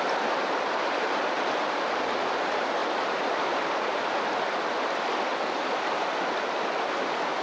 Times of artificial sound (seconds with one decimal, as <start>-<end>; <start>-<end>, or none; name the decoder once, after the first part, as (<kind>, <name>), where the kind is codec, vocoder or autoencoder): 0.0-2.8 (vocoder, BigVGAN v2)